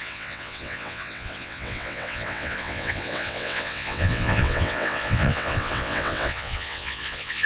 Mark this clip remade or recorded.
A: remade